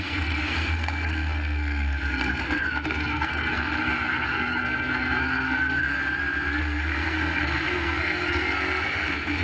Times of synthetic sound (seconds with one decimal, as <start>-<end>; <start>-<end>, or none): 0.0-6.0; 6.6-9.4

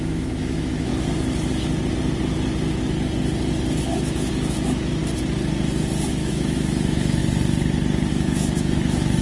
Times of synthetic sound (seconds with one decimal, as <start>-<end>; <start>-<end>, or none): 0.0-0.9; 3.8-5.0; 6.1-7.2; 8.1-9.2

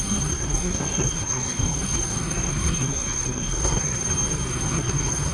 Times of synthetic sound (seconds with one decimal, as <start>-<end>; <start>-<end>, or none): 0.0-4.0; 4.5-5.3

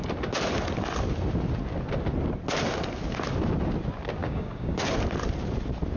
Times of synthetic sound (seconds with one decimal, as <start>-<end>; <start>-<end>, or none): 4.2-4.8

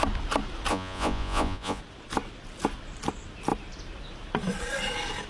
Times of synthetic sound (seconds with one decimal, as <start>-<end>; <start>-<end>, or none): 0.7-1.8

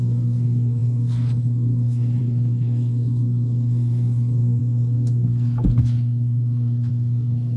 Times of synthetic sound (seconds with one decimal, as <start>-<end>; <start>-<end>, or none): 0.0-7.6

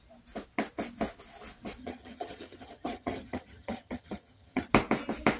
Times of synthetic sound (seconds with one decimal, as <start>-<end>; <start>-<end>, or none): 1.8-4.7

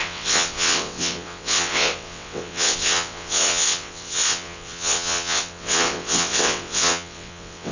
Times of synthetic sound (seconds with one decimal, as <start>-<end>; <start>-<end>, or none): 0.0-7.7